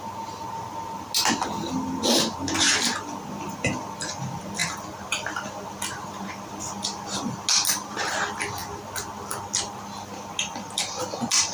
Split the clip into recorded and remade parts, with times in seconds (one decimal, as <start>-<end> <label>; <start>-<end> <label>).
0.0-11.5 recorded